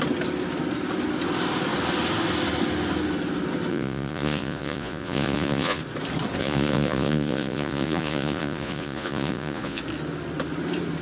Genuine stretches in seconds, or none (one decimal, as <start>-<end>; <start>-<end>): 0.0-3.7; 5.8-6.4; 9.8-11.0

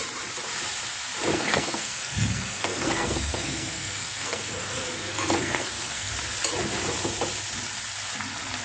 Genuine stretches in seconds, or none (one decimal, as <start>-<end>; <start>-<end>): 0.0-1.3; 6.1-8.6

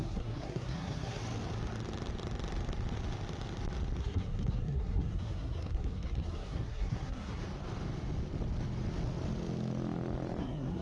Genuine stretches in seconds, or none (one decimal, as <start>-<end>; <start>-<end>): 1.2-4.0; 7.4-10.4

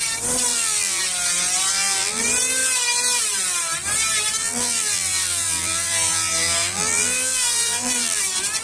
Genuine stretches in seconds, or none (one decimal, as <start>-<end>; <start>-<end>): 0.0-0.5; 1.0-1.7; 2.2-4.4; 8.2-8.6

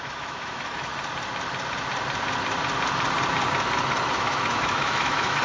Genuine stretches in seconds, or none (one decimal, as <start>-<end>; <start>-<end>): 0.9-4.1

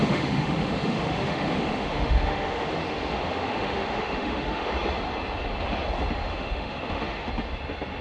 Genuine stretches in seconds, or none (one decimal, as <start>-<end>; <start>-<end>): 4.7-6.2; 7.3-8.0

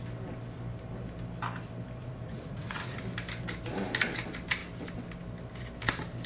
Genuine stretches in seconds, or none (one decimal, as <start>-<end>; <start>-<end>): 0.0-2.0; 3.0-6.3